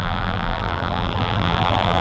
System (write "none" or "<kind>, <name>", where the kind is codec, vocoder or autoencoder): vocoder, BigVGAN v2